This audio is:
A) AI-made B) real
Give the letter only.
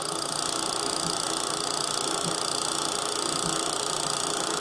B